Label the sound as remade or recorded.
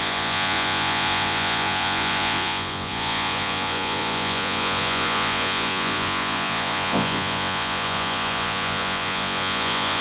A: remade